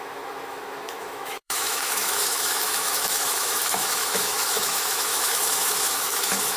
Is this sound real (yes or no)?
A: no